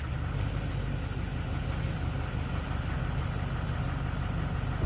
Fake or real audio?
real